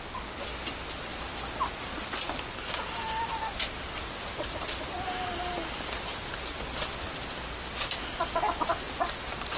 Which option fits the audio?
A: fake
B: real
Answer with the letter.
B